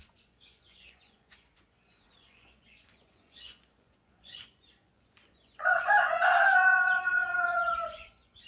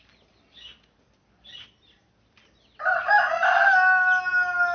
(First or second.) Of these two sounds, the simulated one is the first